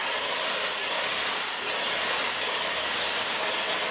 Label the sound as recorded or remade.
recorded